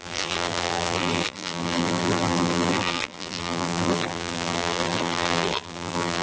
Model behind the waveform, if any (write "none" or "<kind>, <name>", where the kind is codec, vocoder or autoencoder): vocoder, BigVGAN v2